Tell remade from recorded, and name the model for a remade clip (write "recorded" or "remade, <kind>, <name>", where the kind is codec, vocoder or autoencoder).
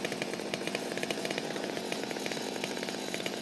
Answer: remade, vocoder, Vocos